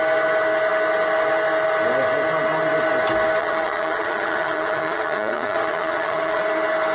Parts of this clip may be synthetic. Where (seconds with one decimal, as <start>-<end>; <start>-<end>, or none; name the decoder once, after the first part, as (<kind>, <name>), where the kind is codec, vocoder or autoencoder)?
3.4-6.4 (vocoder, WaveNeXt)